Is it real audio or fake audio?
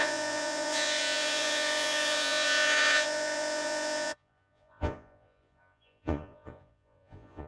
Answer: fake